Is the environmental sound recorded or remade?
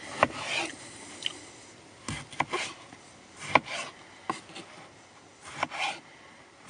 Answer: recorded